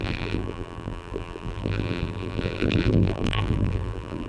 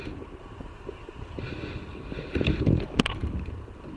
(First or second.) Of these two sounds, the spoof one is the first